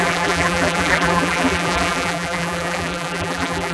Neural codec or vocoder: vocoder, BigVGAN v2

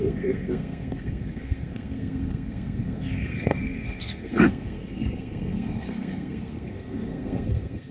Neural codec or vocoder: codec, SNAC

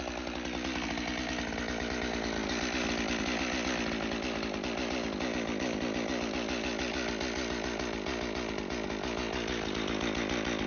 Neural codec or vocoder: none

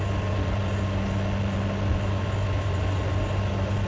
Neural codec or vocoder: none